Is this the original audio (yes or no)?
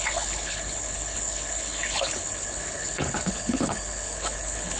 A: no